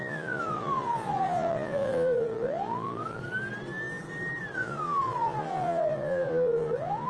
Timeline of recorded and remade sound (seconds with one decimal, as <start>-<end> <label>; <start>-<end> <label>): 0.0-3.2 remade; 3.2-4.5 recorded; 4.5-7.1 remade